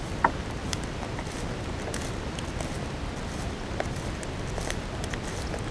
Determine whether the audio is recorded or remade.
recorded